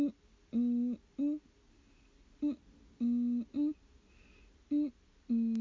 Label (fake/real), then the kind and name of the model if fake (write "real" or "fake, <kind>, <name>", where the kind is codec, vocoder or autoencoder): real